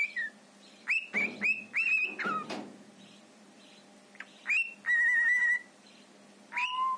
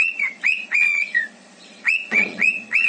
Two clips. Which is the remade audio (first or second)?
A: second